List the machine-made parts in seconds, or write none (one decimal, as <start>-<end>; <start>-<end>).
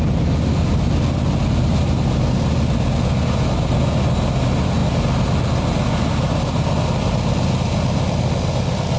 none